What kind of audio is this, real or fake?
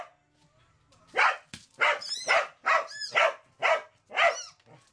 real